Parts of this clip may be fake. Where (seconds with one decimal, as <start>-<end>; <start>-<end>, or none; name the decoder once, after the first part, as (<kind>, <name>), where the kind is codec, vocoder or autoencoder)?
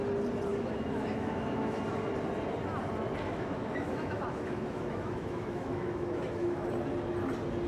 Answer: 0.5-1.8 (autoencoder, DAC-VAE); 3.3-6.7